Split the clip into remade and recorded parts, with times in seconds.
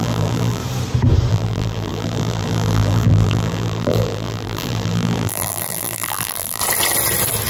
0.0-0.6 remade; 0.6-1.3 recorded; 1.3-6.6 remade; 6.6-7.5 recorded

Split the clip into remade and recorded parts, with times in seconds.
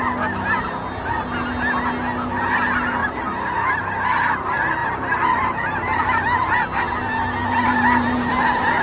0.0-3.0 recorded; 3.0-3.8 remade; 3.8-4.8 recorded; 4.8-6.0 remade; 6.0-7.4 recorded; 7.4-8.3 remade; 8.3-8.8 recorded